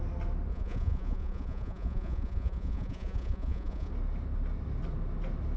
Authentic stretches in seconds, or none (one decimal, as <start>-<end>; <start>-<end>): 0.0-0.5; 3.9-5.6